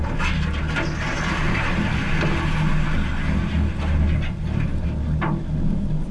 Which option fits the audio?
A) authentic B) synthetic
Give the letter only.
A